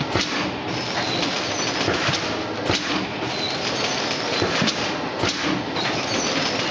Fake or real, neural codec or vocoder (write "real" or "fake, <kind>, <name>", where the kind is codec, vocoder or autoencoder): real